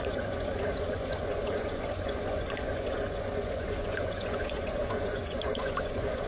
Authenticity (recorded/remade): remade